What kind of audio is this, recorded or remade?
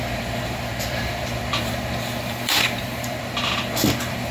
remade